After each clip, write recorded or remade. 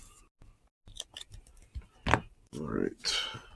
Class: recorded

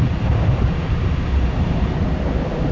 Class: recorded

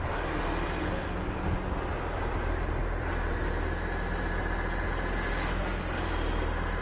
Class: recorded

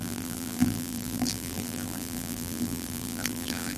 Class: remade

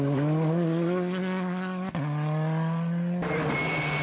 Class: recorded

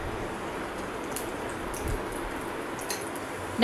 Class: remade